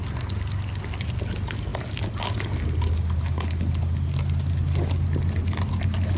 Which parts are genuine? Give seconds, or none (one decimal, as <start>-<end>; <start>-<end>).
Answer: 0.0-6.2